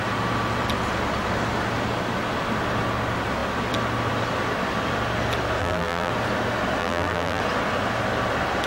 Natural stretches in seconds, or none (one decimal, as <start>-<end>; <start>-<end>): 0.0-5.6; 6.1-6.8; 7.4-8.7